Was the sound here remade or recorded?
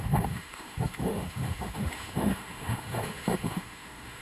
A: remade